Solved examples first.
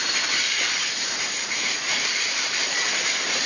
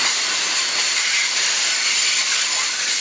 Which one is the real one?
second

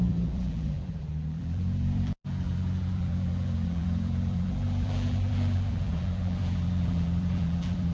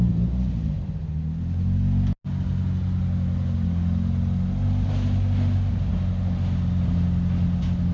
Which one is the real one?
second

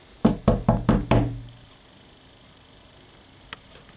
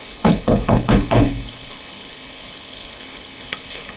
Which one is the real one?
first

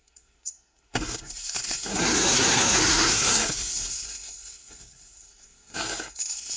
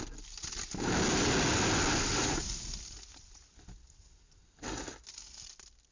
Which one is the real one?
second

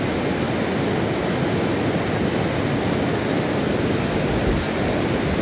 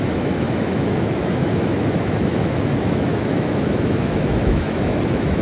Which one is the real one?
first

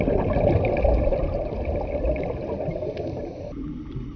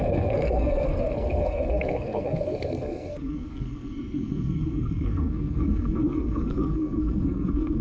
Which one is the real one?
first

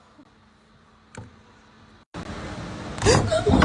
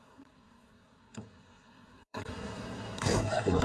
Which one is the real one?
first